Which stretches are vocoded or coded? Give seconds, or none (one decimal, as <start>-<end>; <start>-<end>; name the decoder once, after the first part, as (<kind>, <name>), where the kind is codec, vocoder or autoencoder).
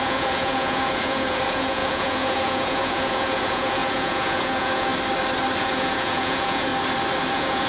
0.0-4.9 (vocoder, Vocos); 5.6-6.7; 7.3-7.7